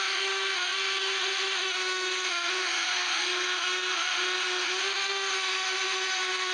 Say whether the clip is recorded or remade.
remade